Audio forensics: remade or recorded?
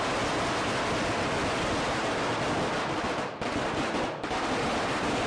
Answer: recorded